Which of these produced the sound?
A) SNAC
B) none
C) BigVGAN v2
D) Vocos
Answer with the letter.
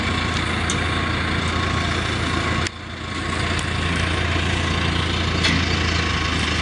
B